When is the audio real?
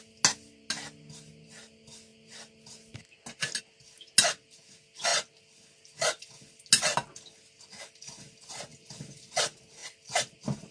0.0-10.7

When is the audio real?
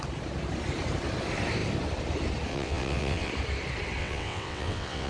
0.0-2.5; 3.3-4.0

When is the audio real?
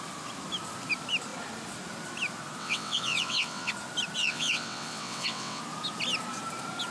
0.0-2.6; 3.7-4.2; 5.6-6.9